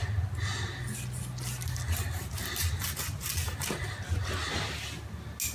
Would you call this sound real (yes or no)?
yes